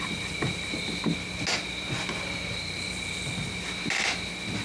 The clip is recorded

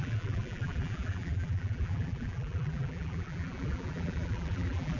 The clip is remade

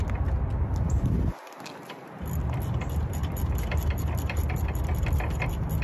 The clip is recorded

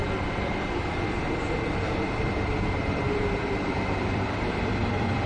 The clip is remade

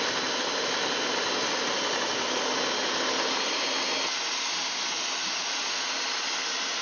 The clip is recorded